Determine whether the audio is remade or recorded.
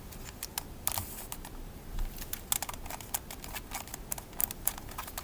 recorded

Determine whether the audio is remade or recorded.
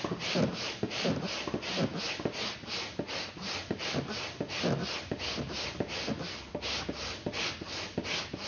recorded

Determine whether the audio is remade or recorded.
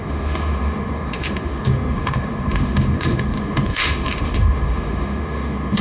remade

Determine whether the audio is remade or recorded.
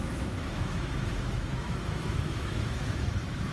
remade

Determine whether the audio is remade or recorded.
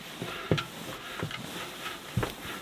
recorded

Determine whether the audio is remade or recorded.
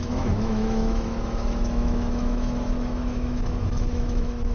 remade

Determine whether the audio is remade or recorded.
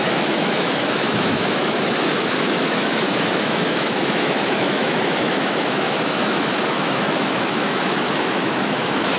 remade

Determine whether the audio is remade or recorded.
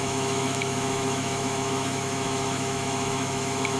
remade